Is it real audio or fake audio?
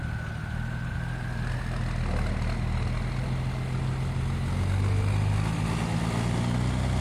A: real